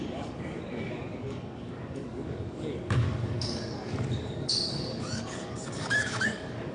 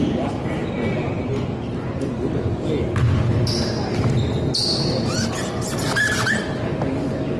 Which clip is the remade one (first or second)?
first